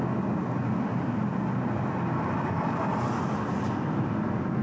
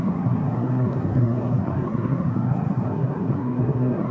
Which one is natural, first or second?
first